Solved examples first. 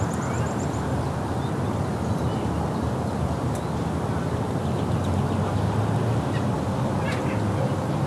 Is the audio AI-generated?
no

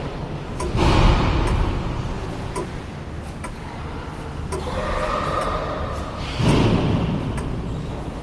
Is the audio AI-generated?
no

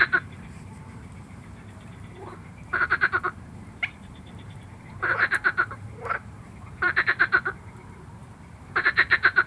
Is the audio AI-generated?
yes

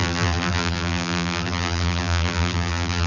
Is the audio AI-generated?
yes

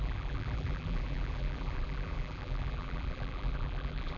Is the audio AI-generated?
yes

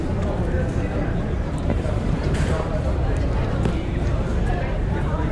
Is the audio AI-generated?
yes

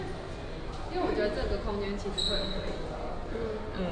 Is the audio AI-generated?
no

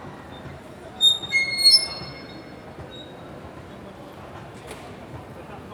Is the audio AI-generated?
no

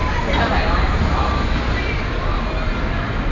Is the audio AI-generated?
no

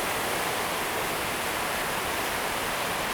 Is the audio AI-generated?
no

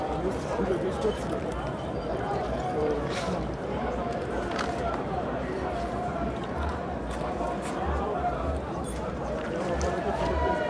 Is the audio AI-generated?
yes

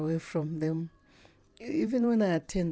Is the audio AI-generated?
yes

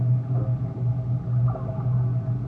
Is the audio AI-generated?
no